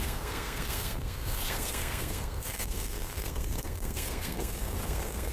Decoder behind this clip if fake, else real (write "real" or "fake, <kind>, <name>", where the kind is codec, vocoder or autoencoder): fake, codec, SNAC